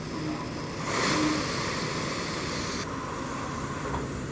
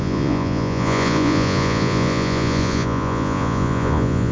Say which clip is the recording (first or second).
first